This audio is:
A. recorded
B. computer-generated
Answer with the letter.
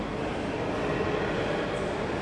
A